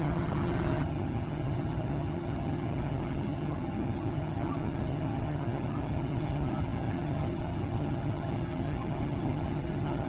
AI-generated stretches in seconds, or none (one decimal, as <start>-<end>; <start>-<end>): 0.0-10.1